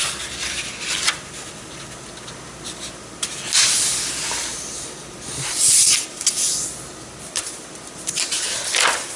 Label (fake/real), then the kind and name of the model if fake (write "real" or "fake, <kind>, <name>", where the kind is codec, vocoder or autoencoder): real